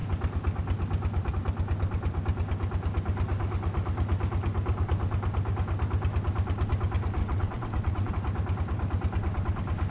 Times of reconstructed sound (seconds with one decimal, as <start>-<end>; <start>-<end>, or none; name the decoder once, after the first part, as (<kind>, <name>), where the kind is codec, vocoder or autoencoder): 7.2-8.1 (vocoder, WaveNeXt)

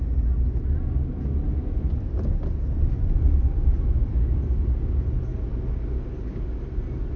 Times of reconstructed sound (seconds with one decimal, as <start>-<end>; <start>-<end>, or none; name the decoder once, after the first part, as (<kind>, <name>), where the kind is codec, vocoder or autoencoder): none

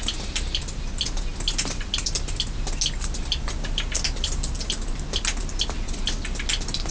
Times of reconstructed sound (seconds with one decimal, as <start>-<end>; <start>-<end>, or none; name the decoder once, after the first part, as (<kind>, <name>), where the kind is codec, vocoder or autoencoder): none

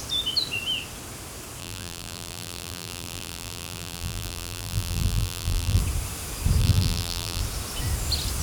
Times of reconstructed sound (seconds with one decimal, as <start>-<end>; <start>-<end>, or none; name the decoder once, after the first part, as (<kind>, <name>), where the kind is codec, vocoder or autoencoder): 1.6-5.8 (vocoder, BigVGAN v2); 6.6-7.4

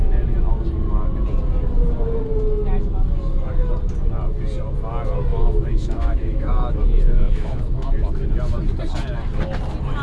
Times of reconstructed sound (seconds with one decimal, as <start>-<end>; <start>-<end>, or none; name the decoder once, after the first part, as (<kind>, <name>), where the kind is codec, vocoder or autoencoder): 5.3-8.1 (autoencoder, DAC-VAE)

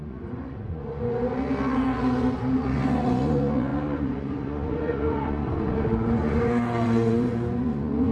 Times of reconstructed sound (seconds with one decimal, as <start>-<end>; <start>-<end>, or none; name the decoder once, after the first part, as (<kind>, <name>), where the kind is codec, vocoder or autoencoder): 0.0-8.1 (vocoder, Vocos)

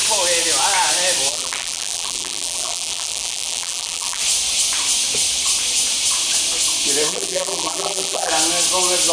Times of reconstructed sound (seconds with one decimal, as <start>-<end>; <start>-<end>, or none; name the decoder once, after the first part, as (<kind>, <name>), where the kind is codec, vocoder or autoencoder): 1.3-4.2 (vocoder, BigVGAN v2); 7.1-8.3

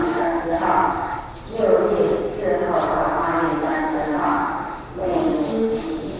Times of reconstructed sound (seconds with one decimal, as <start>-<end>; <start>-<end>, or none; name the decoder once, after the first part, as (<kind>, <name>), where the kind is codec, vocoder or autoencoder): 0.0-0.6 (autoencoder, DAC-VAE); 3.7-6.2